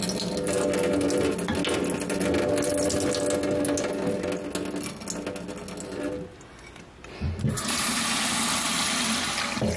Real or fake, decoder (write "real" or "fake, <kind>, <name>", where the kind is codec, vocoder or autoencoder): real